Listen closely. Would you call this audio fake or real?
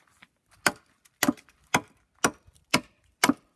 real